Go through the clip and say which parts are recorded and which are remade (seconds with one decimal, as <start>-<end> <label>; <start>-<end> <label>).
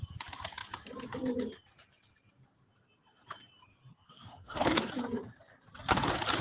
0.0-3.9 recorded; 3.9-4.9 remade; 4.9-6.4 recorded